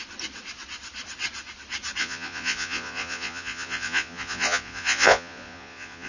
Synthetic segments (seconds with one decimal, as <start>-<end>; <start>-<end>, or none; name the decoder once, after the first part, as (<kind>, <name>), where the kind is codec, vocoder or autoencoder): 2.0-6.1 (vocoder, Vocos)